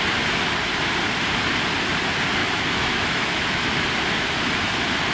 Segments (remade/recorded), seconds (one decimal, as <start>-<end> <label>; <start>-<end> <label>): 0.0-2.4 recorded; 2.4-3.7 remade; 3.7-5.1 recorded